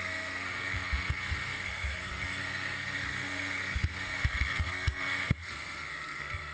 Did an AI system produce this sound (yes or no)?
yes